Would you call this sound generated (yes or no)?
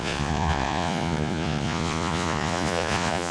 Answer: yes